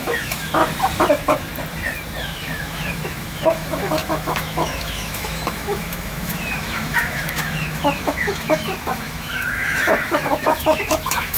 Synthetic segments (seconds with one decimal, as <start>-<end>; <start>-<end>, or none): 0.0-0.6; 1.1-1.5; 2.2-11.4